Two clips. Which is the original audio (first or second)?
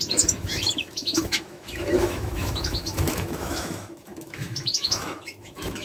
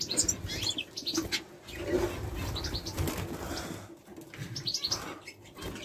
second